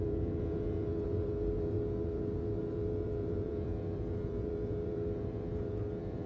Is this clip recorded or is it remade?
remade